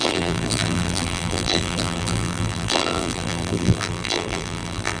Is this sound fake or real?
fake